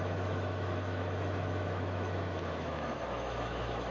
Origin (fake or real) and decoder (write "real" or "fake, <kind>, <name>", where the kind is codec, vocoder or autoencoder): fake, autoencoder, DAC-VAE